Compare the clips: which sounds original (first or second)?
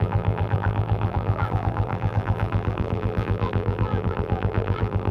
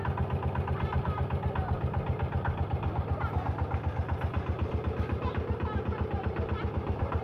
second